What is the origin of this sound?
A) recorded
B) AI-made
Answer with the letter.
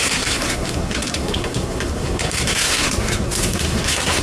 B